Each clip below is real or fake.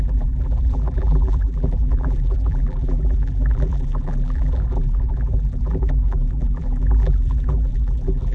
fake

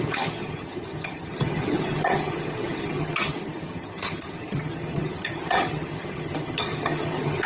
fake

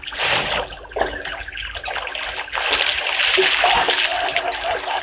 real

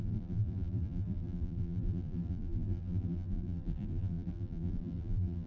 fake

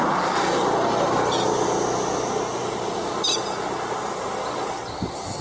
real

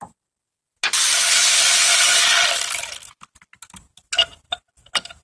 real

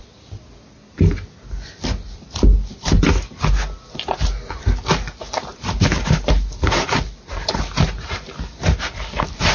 real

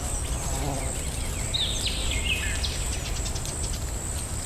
real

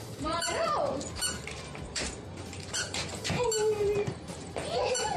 fake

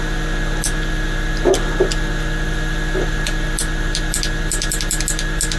real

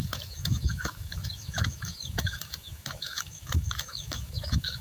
fake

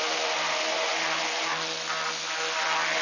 real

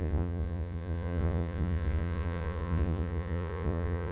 fake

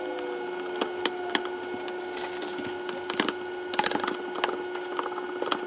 real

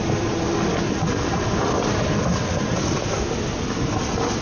real